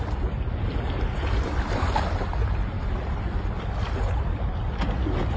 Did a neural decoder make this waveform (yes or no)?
no